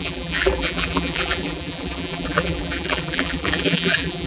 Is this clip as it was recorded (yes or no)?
no